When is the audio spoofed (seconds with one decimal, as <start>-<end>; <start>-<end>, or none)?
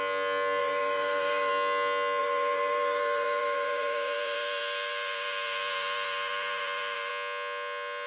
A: 0.6-1.5; 2.2-7.1